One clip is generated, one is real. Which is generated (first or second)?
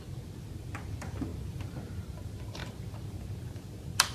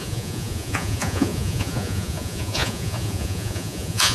second